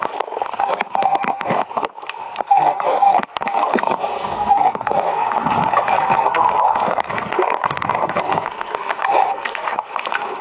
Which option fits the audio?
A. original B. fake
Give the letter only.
B